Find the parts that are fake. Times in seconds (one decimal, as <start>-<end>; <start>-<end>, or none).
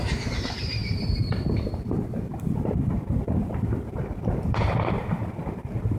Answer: 0.0-6.0